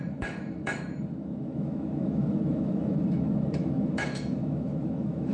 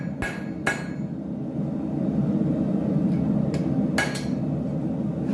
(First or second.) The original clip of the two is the second